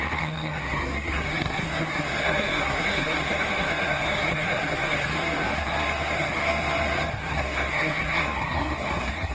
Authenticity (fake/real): fake